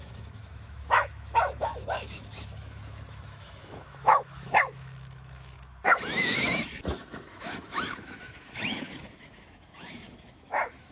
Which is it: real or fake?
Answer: fake